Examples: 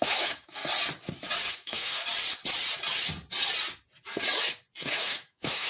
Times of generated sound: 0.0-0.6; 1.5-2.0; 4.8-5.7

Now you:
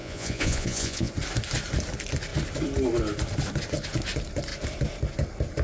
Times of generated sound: 0.0-1.1

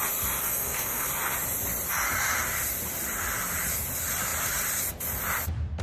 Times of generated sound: 0.4-1.1

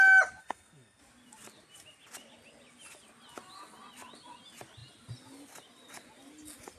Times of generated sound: 0.4-1.0

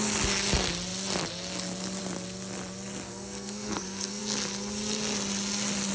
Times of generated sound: 3.1-4.2

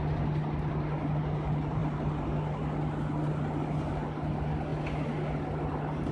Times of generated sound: none